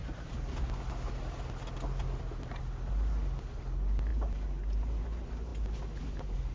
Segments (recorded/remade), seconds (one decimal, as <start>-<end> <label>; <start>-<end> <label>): 0.0-6.5 recorded